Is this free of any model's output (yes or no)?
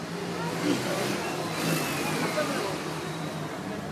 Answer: yes